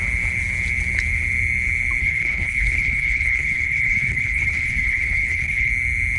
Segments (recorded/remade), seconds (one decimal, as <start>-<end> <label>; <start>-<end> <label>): 0.0-2.0 recorded; 2.0-5.7 remade; 5.7-6.2 recorded